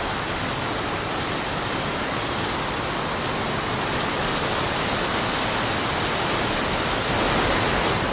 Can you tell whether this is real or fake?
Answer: real